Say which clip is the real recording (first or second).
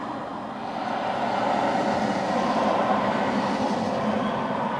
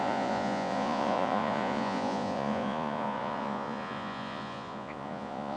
first